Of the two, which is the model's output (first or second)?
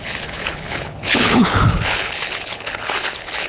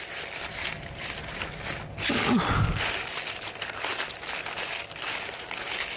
first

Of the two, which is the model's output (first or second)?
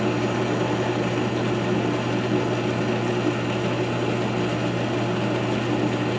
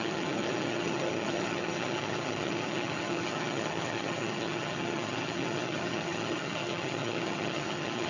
second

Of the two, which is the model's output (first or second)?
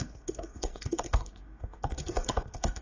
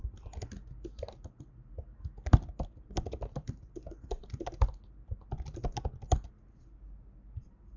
first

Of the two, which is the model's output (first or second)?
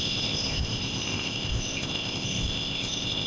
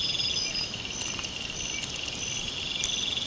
first